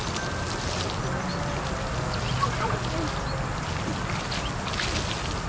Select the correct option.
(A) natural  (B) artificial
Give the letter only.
A